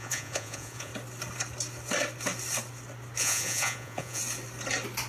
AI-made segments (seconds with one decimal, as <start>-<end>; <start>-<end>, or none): 0.0-0.9; 3.2-4.2